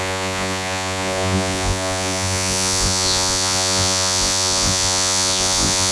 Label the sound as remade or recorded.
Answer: remade